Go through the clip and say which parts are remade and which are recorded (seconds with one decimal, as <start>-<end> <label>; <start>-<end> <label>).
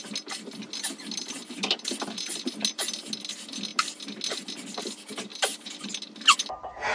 0.0-5.3 recorded; 5.3-5.9 remade; 5.9-6.9 recorded